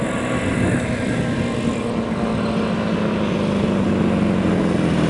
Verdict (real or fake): real